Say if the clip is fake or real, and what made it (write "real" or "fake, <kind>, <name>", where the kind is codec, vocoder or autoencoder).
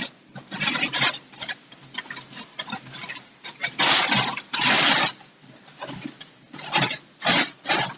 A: real